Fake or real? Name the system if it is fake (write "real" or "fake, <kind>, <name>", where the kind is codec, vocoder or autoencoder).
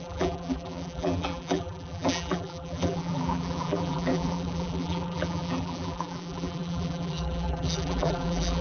fake, vocoder, BigVGAN v2